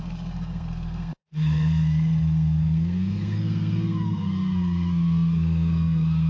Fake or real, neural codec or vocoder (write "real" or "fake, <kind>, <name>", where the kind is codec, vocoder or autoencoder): fake, codec, SNAC